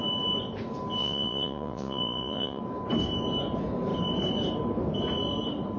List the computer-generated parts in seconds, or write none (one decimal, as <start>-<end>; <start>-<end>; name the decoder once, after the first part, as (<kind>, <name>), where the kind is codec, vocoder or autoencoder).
1.0-2.6 (vocoder, Vocos)